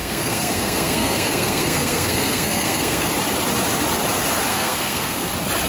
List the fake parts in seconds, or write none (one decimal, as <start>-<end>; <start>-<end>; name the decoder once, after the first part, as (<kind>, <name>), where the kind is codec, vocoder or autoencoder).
0.0-3.1 (codec, SNAC); 4.5-5.3